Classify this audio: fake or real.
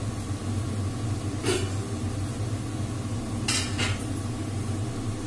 real